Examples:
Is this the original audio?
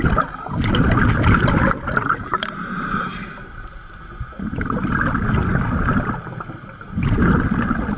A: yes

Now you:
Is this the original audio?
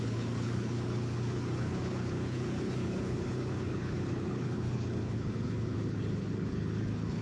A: no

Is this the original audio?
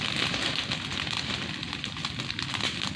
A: yes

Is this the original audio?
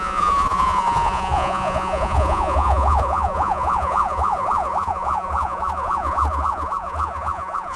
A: no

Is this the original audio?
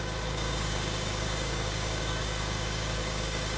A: no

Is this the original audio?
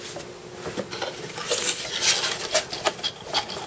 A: yes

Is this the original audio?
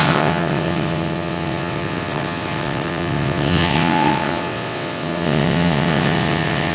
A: no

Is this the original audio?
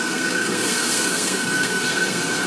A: no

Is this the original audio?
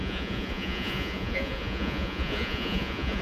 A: no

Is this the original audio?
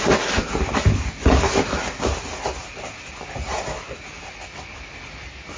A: yes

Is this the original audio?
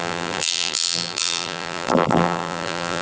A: no